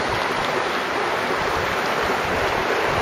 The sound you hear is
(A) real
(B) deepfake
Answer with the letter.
A